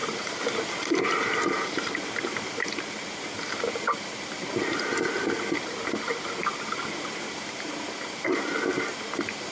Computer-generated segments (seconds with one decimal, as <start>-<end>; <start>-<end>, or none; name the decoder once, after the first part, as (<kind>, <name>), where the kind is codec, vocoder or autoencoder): none

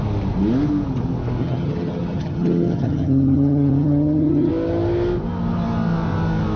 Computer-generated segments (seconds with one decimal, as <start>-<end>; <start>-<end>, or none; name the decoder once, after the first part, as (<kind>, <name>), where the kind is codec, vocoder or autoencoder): 1.4-4.5 (vocoder, HiFi-GAN)

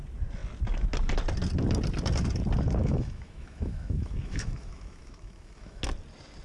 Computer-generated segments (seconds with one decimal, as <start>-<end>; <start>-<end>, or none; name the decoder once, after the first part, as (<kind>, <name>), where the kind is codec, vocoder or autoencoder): 2.8-5.8 (autoencoder, DAC-VAE)